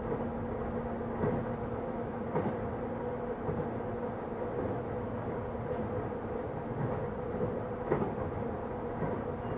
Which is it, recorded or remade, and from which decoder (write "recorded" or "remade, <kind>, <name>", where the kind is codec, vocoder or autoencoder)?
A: recorded